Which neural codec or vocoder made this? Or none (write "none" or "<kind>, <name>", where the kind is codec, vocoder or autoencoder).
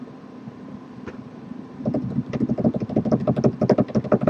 vocoder, BigVGAN v2